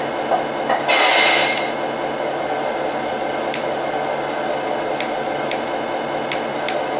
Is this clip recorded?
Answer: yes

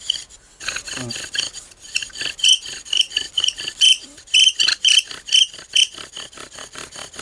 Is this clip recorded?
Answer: yes